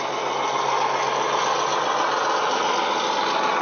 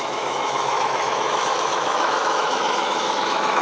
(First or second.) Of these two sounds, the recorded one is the first